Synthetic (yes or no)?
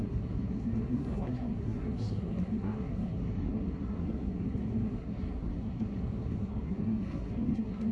yes